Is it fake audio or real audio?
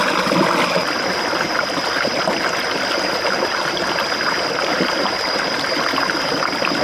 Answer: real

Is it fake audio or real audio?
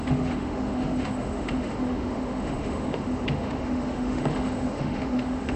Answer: fake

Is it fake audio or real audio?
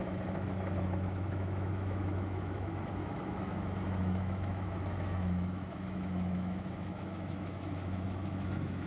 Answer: fake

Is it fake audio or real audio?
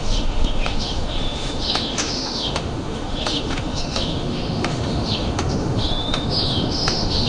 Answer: fake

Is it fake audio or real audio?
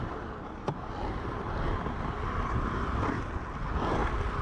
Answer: real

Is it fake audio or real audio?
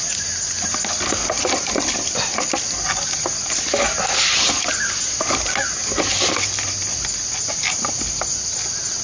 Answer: real